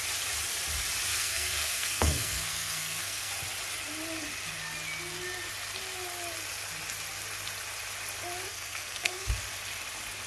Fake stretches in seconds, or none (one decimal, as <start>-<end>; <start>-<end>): 1.1-3.3; 8.5-9.3

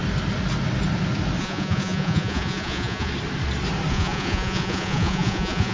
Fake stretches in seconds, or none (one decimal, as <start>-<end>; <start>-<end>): 1.4-3.1; 3.9-5.7

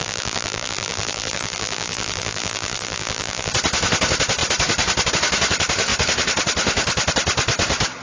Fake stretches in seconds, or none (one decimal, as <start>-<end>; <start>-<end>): 0.0-3.5

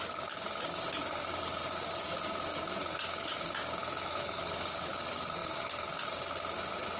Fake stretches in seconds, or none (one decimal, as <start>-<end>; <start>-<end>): 3.8-4.4